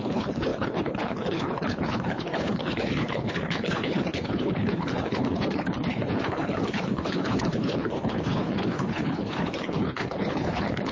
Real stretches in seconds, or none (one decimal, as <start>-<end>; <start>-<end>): none